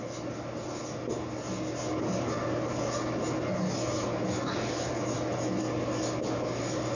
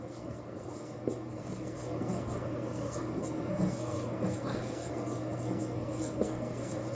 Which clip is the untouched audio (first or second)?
first